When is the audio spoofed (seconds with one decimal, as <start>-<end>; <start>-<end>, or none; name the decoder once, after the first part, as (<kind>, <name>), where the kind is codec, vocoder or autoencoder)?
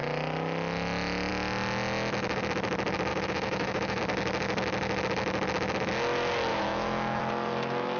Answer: 3.1-4.0 (autoencoder, DAC-VAE); 6.5-7.2